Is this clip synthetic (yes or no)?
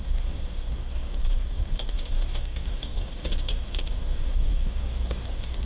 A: yes